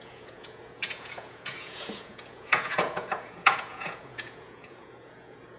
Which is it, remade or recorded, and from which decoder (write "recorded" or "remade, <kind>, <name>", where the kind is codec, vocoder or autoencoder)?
remade, vocoder, Vocos